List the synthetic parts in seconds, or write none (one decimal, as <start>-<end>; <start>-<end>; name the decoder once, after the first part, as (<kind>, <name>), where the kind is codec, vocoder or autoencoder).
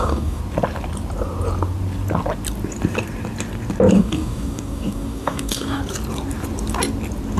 0.0-0.4 (codec, DAC); 3.9-5.8